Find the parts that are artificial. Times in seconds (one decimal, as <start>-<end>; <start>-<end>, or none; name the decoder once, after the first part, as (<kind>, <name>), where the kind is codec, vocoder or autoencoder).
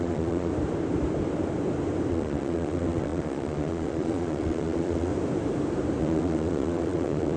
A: 0.0-0.5 (vocoder, Vocos); 2.1-5.1; 6.0-7.4